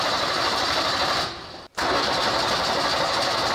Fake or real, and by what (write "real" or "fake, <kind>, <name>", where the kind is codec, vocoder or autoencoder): fake, vocoder, BigVGAN v2